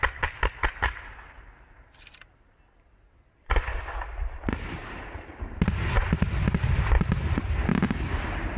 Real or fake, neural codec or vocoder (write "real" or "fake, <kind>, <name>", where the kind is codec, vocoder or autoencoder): real